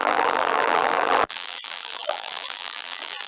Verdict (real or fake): fake